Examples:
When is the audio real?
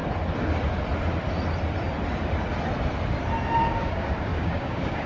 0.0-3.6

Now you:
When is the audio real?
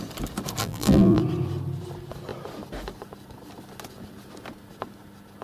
0.0-0.6; 1.2-5.4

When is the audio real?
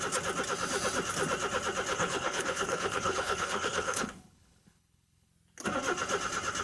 0.0-1.9; 5.3-6.6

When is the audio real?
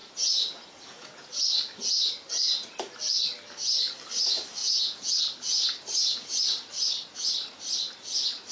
1.3-4.6; 5.2-8.5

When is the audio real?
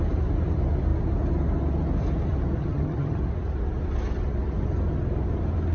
0.0-2.6; 3.2-5.7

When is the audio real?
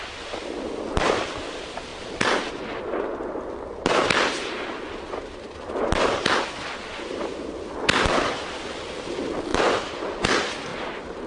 0.0-1.9; 2.8-9.5; 10.0-11.3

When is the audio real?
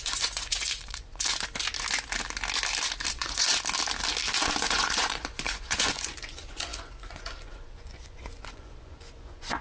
1.3-3.1; 3.5-4.6